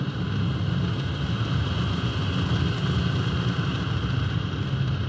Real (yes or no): yes